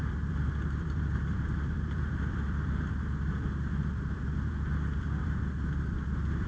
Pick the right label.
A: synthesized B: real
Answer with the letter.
A